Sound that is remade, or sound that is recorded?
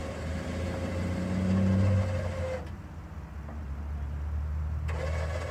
recorded